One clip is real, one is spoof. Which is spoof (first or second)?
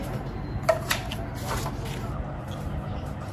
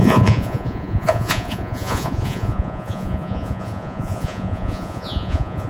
second